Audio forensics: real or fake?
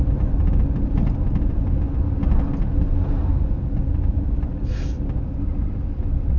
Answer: real